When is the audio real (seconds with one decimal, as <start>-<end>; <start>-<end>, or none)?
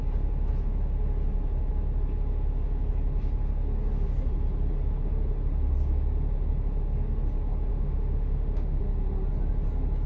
0.0-7.7; 8.8-10.1